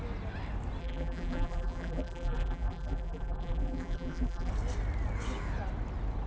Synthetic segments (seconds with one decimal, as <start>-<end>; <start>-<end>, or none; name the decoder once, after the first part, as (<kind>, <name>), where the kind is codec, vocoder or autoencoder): 0.8-4.5 (vocoder, BigVGAN v2)